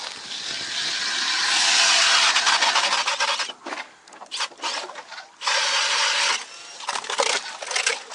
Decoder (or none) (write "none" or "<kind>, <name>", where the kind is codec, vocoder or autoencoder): none